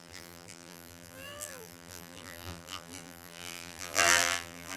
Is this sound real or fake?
fake